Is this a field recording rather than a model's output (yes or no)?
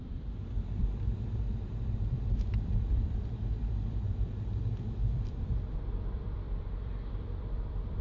no